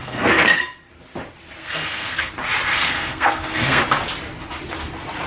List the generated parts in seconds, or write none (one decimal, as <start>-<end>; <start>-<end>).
0.0-0.6; 1.6-2.3; 2.7-3.8